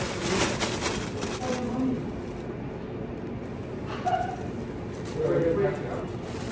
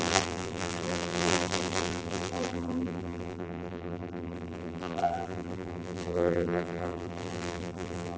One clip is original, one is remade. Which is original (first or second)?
first